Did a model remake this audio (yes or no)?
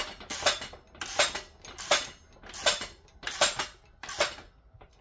no